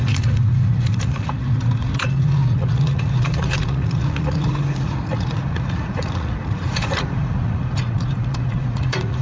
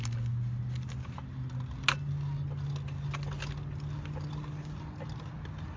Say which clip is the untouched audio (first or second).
second